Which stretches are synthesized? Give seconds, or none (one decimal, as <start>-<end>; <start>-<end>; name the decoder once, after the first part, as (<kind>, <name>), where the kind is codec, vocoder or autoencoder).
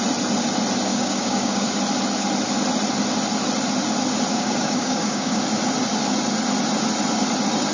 0.9-1.7 (codec, DAC); 4.3-5.4